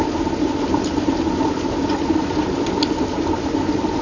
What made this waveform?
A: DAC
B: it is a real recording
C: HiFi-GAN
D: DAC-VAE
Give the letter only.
B